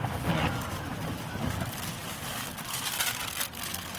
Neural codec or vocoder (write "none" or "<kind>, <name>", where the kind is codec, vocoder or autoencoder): none